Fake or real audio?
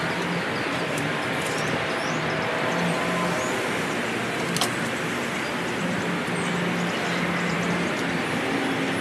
real